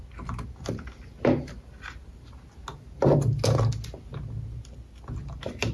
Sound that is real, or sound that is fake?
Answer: real